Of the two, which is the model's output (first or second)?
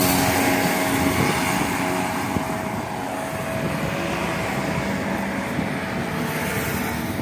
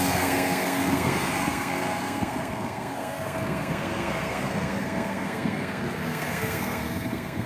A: second